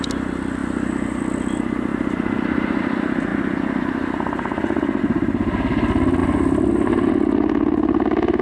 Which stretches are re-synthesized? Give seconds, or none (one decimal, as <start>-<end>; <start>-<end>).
0.6-1.2; 1.9-2.8; 6.2-7.1